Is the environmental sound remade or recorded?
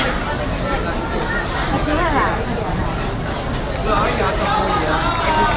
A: recorded